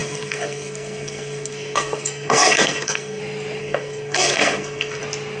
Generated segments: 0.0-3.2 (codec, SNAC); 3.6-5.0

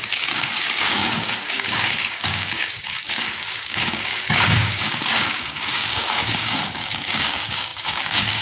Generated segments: 0.0-8.4 (codec, DAC)

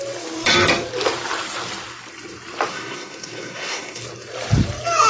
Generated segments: 2.7-4.0 (codec, SNAC)